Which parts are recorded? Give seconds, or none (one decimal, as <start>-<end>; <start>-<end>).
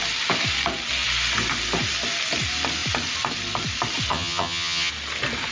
0.0-4.1; 4.9-5.5